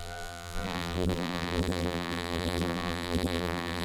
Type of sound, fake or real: fake